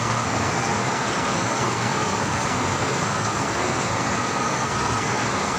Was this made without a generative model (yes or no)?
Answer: no